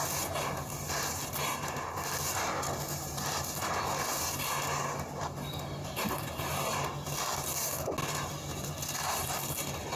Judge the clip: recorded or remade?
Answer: recorded